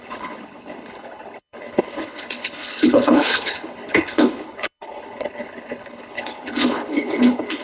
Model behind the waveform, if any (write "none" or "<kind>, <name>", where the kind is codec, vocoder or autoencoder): codec, HILCodec